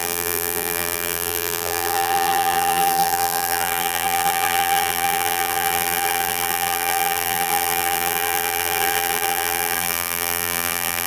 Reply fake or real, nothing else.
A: fake